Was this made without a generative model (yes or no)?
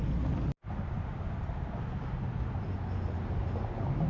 yes